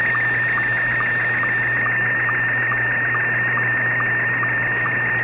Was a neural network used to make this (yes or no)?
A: no